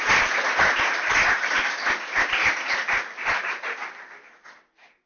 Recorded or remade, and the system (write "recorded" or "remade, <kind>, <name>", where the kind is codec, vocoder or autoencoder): recorded